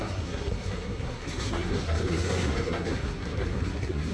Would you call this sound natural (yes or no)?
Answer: no